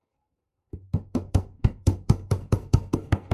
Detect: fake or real fake